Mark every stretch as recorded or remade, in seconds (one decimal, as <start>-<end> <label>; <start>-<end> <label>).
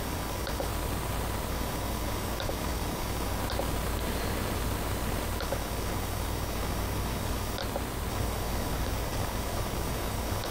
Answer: 0.0-0.7 remade; 0.7-1.5 recorded; 1.5-3.4 remade; 3.4-5.4 recorded; 5.4-7.6 remade; 7.6-8.1 recorded; 8.1-10.5 remade